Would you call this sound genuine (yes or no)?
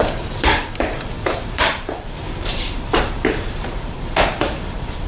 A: no